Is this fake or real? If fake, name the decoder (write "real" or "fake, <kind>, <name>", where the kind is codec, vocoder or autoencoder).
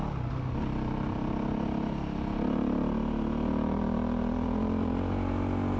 real